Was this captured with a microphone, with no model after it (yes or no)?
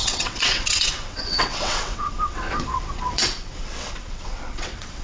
no